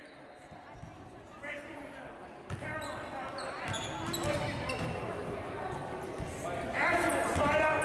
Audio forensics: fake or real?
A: real